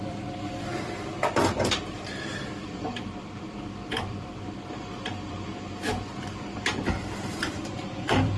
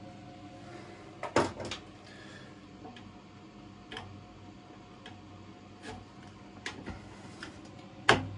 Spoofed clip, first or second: first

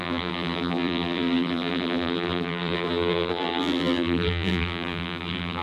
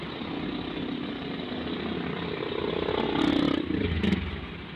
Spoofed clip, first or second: first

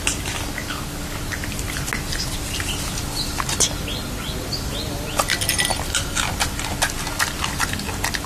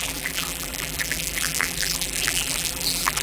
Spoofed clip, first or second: second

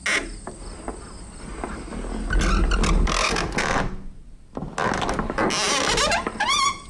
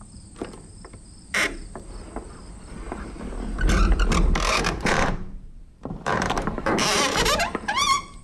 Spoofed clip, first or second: second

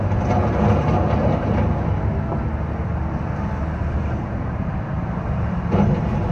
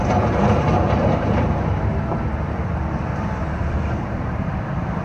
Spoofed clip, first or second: second